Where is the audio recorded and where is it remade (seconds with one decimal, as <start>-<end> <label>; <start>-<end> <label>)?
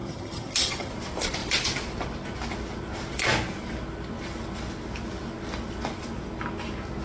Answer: 0.0-0.9 remade; 0.9-7.0 recorded